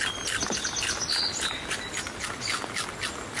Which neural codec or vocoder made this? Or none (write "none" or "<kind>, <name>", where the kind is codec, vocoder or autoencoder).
none